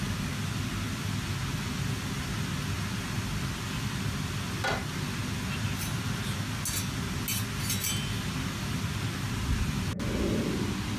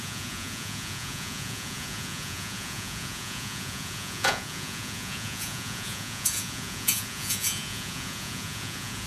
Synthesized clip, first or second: second